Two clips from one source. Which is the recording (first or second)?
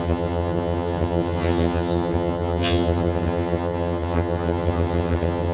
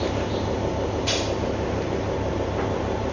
second